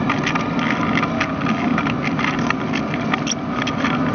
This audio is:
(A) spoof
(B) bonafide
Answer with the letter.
B